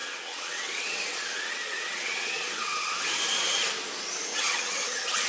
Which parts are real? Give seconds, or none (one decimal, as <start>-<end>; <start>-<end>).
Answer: 3.2-4.3